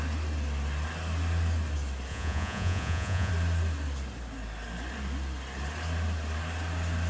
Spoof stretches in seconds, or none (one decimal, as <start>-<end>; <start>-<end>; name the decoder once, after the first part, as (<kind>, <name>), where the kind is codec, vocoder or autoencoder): 2.1-3.3 (vocoder, Vocos)